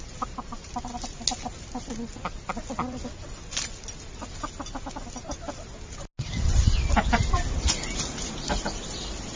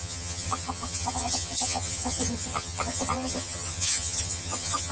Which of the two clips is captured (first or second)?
first